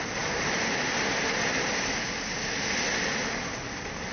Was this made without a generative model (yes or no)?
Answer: yes